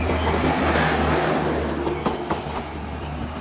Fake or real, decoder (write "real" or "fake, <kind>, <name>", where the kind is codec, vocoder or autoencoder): real